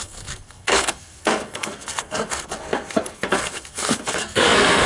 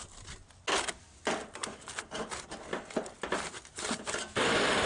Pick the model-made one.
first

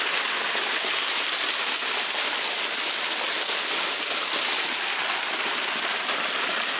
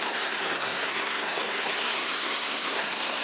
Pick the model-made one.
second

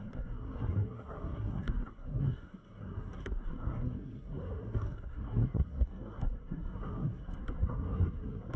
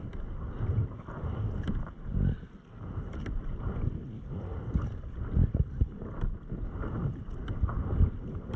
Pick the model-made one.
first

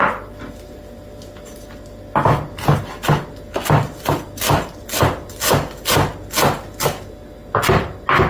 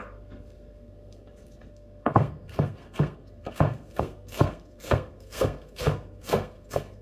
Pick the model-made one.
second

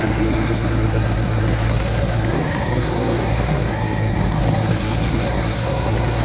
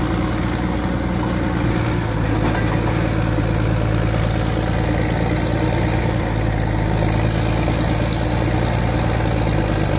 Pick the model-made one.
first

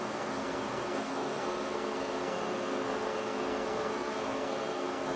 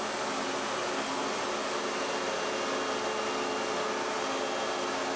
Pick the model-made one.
first